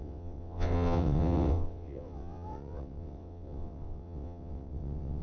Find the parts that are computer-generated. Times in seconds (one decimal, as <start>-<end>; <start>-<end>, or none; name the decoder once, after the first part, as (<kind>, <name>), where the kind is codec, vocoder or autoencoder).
0.0-5.2 (vocoder, WaveNeXt)